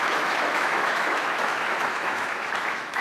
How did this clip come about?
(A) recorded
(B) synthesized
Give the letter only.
B